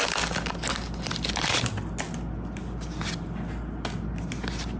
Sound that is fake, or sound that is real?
real